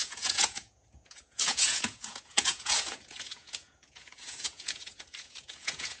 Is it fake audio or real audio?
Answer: fake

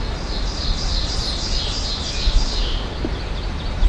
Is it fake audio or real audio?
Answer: real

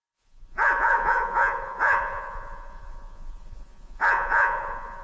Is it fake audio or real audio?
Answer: fake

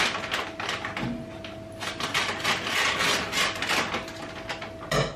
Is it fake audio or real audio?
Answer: real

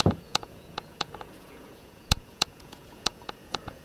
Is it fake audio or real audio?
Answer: fake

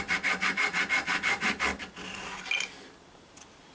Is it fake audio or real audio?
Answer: real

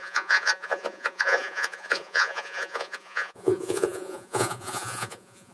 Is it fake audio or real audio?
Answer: fake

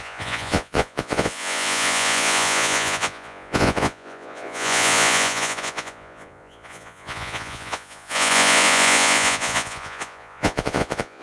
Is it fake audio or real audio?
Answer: fake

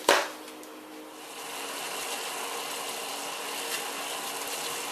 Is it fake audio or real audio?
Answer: real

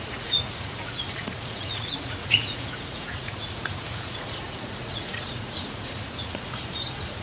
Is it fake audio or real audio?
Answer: fake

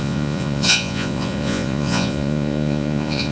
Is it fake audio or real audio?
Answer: fake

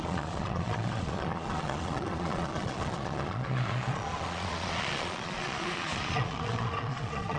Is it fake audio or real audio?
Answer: fake